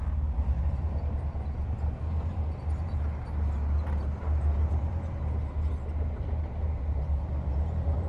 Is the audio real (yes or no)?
yes